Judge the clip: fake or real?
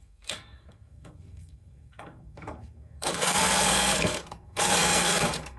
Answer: fake